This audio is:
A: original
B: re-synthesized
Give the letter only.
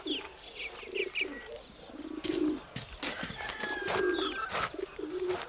A